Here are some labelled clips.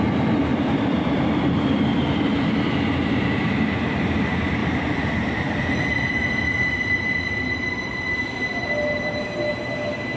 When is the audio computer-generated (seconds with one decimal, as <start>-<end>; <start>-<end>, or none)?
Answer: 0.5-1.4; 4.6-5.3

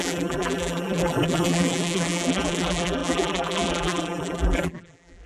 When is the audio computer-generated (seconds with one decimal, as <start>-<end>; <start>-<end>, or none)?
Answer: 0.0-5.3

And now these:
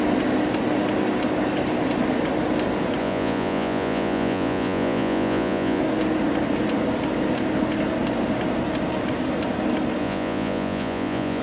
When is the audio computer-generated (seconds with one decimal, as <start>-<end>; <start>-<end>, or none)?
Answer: 3.0-5.8; 10.0-11.4

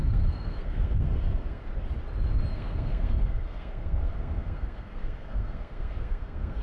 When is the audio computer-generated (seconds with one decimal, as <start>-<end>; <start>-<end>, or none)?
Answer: 0.0-1.6; 2.5-6.6

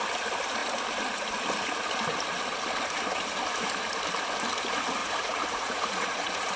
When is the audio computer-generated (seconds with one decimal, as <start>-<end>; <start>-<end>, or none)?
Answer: 5.0-6.6

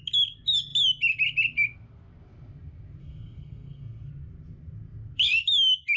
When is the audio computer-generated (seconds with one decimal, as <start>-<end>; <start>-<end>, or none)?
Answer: 3.0-4.1

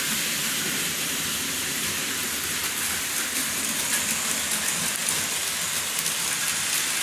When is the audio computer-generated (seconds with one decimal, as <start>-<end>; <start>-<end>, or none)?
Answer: none